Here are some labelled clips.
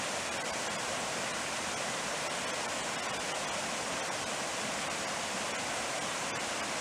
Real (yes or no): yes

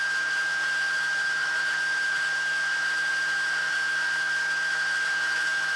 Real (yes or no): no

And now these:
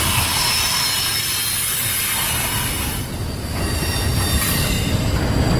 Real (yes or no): yes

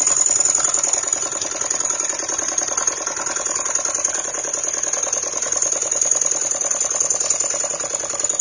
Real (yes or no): yes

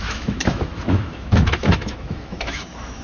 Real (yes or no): no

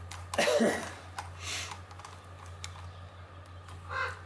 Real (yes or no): yes